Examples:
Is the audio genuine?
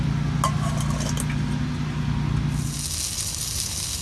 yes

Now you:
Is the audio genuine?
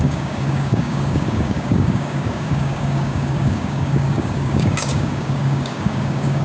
no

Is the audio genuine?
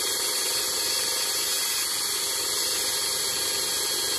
yes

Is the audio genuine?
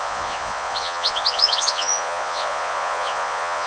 no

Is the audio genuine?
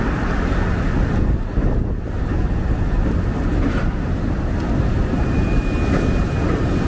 yes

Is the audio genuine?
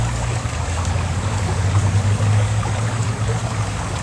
no